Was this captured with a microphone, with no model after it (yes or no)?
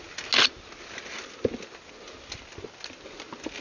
yes